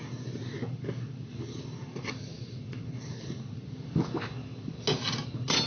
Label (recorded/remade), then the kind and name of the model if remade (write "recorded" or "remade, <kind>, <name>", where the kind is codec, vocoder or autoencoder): recorded